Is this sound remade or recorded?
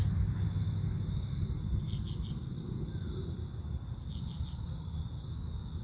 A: recorded